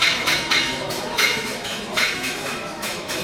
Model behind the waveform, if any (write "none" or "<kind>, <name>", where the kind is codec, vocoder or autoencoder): autoencoder, DAC-VAE